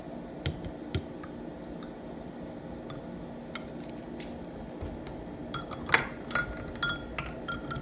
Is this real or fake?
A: real